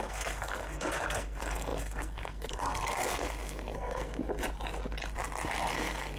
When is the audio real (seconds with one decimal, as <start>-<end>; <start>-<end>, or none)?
4.2-5.7